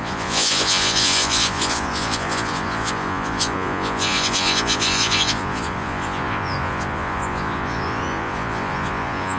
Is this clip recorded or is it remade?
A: remade